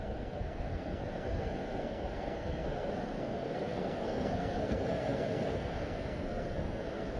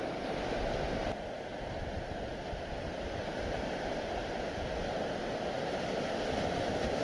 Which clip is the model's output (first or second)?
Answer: first